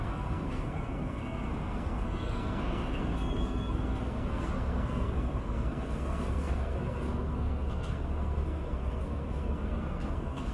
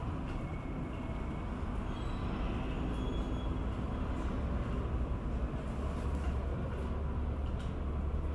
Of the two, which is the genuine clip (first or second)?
second